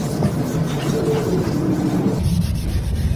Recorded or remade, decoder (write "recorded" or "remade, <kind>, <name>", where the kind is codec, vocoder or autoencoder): recorded